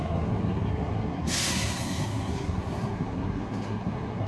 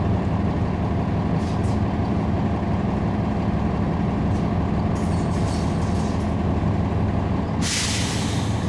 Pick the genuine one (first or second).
second